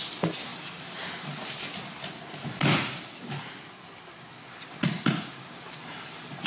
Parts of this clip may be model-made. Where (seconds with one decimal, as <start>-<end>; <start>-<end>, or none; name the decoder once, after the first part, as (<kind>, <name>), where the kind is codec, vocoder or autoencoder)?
none